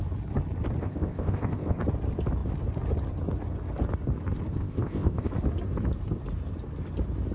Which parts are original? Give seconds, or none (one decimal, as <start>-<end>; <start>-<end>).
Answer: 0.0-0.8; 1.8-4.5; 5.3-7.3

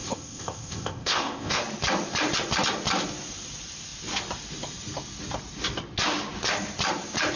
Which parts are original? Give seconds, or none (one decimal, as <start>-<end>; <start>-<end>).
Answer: 1.6-7.4

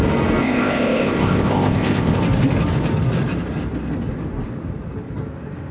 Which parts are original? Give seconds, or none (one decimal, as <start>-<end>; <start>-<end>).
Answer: 0.0-0.4; 2.2-5.7

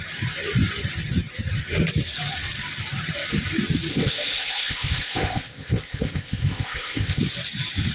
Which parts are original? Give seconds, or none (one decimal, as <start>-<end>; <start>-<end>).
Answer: 0.0-3.9; 7.2-7.9

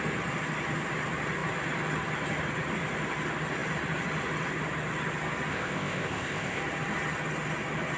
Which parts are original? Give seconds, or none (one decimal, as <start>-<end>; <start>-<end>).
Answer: 0.0-5.5; 6.6-8.0